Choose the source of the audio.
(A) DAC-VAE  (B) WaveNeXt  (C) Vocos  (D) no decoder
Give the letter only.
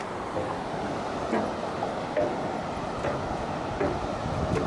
D